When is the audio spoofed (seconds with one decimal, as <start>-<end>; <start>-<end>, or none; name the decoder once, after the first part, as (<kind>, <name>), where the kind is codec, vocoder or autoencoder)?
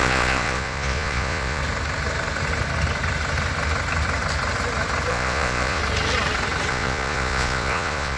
0.0-1.6 (vocoder, Vocos); 5.1-5.8; 6.7-8.2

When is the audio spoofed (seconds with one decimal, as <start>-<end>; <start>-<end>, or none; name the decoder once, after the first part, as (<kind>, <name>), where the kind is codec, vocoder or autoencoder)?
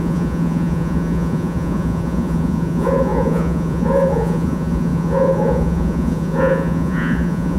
0.0-7.6 (vocoder, Vocos)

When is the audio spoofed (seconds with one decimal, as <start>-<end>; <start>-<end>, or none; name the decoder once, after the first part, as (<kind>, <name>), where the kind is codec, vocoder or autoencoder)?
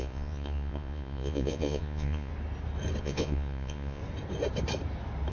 0.0-2.3 (vocoder, Vocos); 3.0-4.0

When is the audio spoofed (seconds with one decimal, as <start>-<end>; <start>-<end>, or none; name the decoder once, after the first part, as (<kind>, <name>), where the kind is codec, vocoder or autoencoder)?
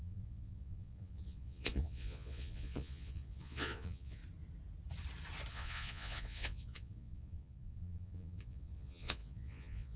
0.0-4.2 (vocoder, Vocos); 5.5-10.0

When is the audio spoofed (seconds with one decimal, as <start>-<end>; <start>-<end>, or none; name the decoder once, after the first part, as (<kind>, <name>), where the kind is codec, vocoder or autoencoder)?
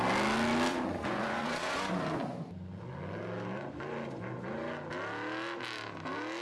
0.7-2.5 (vocoder, Vocos)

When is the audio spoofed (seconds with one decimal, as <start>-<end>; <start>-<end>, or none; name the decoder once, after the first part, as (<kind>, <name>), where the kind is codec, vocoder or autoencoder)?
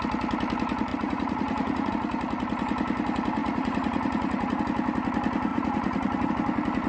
0.9-1.9 (vocoder, Vocos); 3.4-4.6; 5.5-6.3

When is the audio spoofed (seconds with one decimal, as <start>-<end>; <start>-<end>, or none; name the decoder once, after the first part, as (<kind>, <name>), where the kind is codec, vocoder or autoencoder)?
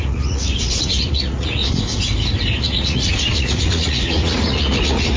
0.0-1.6 (vocoder, Vocos); 2.6-5.2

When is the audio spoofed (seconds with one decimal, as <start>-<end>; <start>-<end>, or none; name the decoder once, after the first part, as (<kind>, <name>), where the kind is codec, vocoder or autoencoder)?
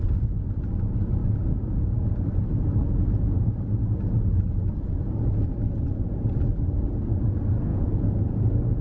7.7-8.4 (vocoder, Vocos)